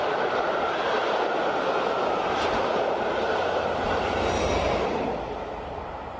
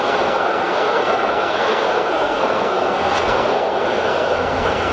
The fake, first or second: second